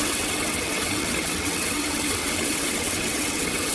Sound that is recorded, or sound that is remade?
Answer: remade